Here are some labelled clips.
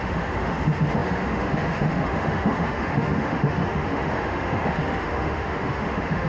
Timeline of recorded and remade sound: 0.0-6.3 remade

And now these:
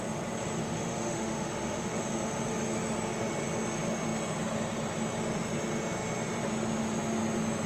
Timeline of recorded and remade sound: 0.0-0.6 recorded; 0.6-2.0 remade; 2.0-7.7 recorded

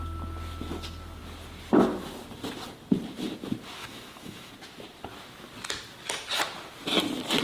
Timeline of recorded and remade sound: 0.0-3.8 recorded; 3.8-4.5 remade; 4.5-7.4 recorded

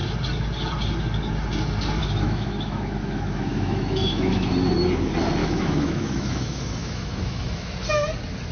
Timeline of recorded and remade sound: 0.0-2.0 recorded; 2.0-4.5 remade; 4.5-5.4 recorded; 5.4-7.7 remade; 7.7-8.5 recorded

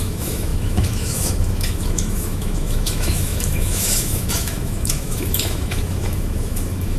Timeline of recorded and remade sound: 0.0-7.0 remade

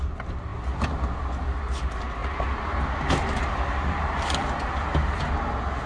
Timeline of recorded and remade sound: 0.0-5.9 recorded

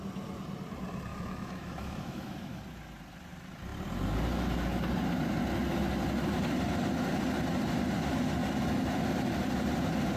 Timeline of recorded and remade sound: 0.0-1.1 recorded; 1.1-2.6 remade; 2.6-10.2 recorded